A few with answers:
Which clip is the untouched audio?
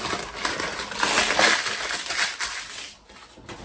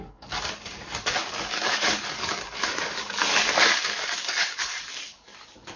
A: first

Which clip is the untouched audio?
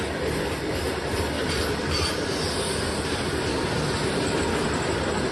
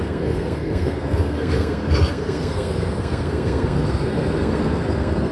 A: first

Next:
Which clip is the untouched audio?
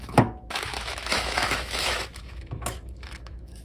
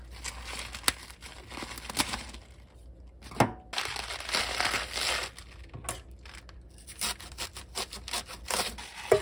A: second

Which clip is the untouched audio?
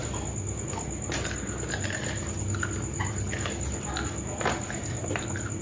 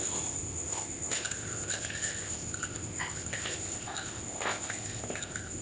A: first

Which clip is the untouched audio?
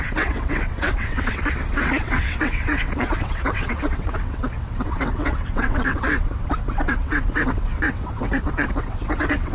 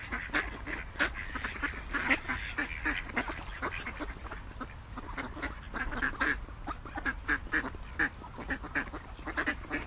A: second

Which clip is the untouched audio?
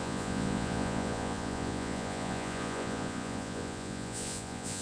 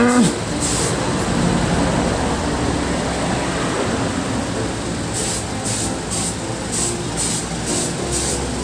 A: second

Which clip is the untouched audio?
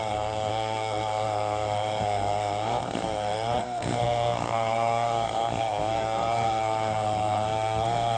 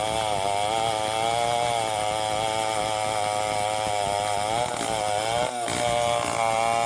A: second